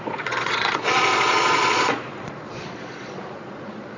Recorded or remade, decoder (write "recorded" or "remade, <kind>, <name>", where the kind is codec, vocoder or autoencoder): remade, vocoder, Vocos